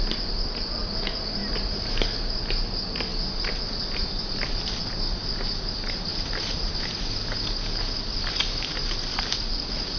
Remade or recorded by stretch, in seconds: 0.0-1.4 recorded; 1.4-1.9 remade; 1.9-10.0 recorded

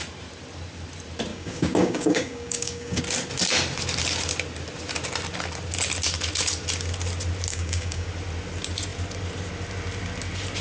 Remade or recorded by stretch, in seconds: 0.0-1.3 recorded; 1.3-3.0 remade; 3.0-7.5 recorded; 7.5-8.1 remade; 8.1-10.6 recorded

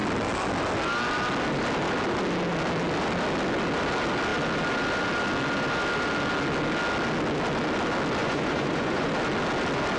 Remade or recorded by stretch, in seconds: 0.0-8.2 recorded; 8.2-9.1 remade; 9.1-10.0 recorded

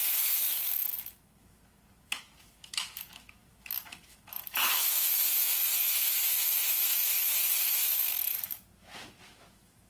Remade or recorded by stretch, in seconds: 0.0-9.9 remade

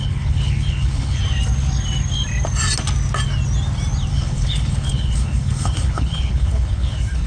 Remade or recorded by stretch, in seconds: 0.0-1.2 remade; 1.2-4.1 recorded; 4.1-7.3 remade

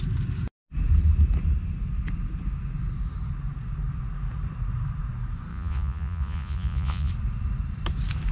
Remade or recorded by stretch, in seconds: 0.0-5.5 recorded; 5.5-7.1 remade; 7.1-8.3 recorded

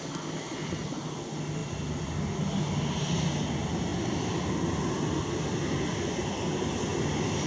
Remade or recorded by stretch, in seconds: 0.0-7.5 recorded

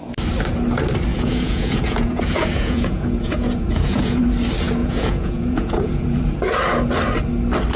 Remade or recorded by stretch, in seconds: 0.0-1.1 recorded; 1.1-4.2 remade; 4.2-4.8 recorded; 4.8-6.2 remade; 6.2-7.8 recorded